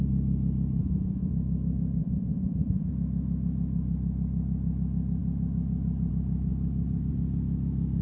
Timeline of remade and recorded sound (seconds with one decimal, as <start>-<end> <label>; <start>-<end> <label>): 0.0-0.8 recorded; 0.8-1.3 remade; 1.3-2.0 recorded; 2.0-2.9 remade; 2.9-8.0 recorded